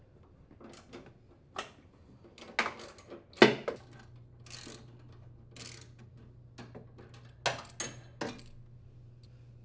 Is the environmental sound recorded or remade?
recorded